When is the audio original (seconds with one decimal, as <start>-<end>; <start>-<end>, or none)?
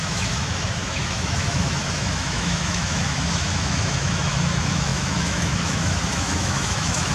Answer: none